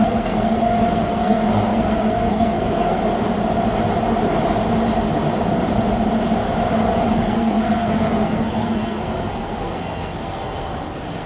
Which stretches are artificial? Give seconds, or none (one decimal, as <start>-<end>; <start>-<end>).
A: 0.0-3.0; 7.1-11.3